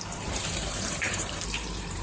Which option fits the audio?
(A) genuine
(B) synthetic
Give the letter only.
B